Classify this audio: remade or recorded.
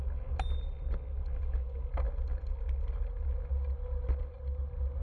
recorded